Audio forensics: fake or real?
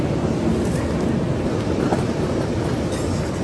real